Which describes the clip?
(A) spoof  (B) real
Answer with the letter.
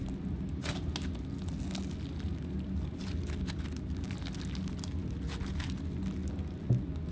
B